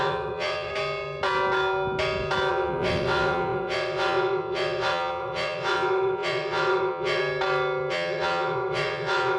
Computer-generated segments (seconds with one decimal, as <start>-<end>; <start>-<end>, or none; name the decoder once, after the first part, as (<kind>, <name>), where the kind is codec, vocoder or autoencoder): 0.0-0.7 (vocoder, WaveNeXt); 2.5-7.2; 7.9-9.4